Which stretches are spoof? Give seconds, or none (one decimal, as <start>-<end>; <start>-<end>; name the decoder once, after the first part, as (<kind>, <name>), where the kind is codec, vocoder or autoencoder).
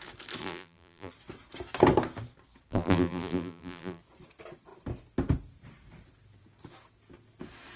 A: 0.4-1.1 (vocoder, BigVGAN v2); 2.7-4.0